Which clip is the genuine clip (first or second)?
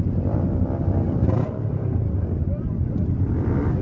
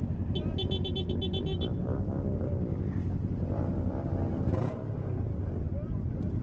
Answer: second